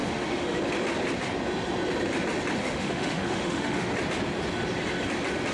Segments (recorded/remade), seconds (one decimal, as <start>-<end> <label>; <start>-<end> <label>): 0.0-0.6 remade; 0.6-2.6 recorded; 2.6-3.9 remade; 3.9-5.5 recorded

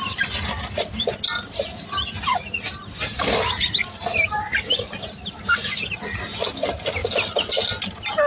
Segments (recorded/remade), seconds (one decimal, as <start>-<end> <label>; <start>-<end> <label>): 0.0-8.3 recorded

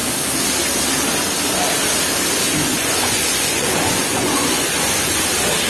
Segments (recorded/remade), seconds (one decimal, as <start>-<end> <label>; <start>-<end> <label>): 0.0-2.7 recorded; 2.7-5.2 remade; 5.2-5.7 recorded

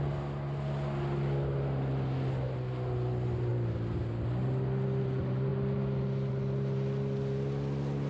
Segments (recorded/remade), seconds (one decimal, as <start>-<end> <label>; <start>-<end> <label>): 0.0-8.1 recorded